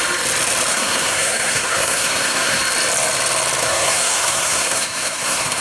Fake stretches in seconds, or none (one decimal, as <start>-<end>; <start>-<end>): 0.7-2.6; 3.6-5.6